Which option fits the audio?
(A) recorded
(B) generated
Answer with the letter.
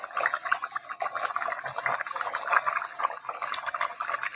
A